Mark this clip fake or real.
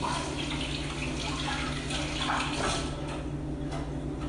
real